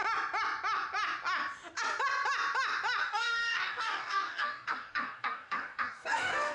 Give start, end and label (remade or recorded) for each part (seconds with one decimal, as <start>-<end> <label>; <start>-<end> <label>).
0.0-3.0 recorded; 3.0-6.5 remade